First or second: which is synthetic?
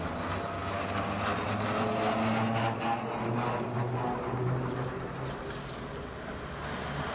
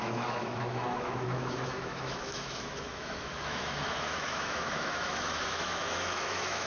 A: second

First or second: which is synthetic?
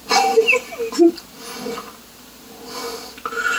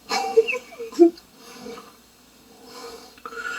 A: second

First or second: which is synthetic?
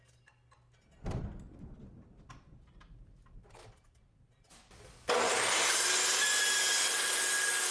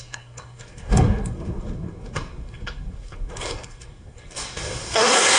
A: second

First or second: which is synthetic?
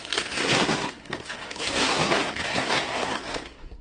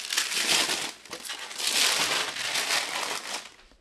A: first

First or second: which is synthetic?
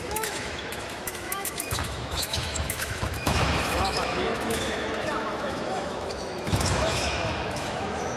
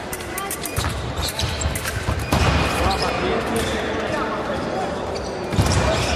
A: first